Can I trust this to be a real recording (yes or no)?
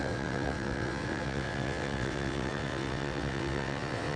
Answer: no